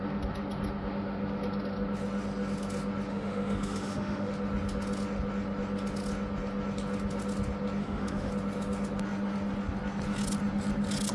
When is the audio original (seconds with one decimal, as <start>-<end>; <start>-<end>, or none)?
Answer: 0.0-3.1; 4.3-7.8; 8.3-11.1